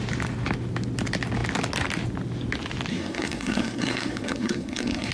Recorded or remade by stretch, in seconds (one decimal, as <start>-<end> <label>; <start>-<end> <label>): 0.0-2.9 recorded; 2.9-5.1 remade